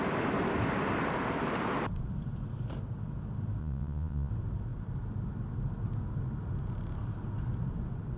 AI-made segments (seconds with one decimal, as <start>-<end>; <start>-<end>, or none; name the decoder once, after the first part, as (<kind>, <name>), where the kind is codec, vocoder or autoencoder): 3.6-4.3 (vocoder, Vocos)